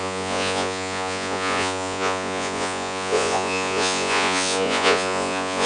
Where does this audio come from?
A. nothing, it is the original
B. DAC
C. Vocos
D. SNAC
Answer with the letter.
C